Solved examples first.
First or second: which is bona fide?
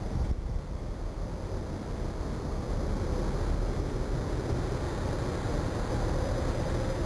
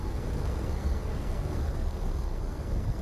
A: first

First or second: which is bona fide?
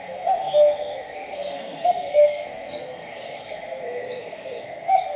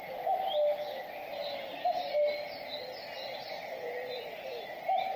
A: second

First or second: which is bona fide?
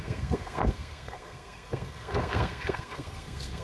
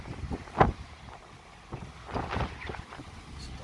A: second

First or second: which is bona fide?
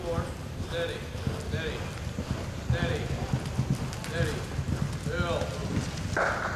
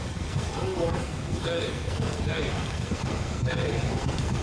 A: first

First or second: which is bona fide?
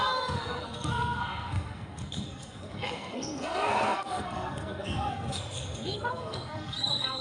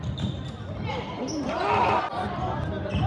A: second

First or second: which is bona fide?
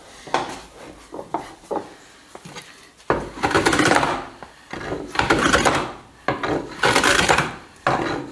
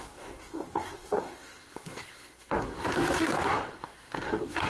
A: first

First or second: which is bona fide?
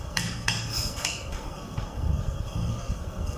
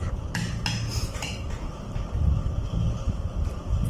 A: second